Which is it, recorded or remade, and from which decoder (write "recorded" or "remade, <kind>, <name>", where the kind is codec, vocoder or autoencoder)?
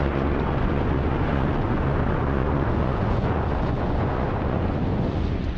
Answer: remade, vocoder, Vocos